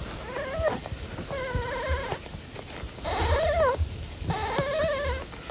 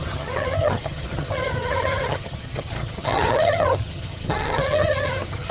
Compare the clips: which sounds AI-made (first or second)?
second